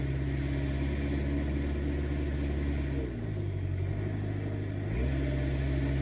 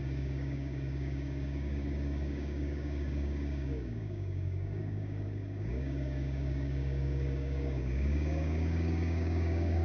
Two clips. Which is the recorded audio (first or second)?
first